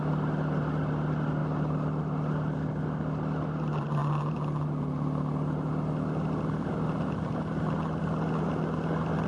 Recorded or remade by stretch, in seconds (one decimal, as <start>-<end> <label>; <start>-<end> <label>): 0.0-9.3 recorded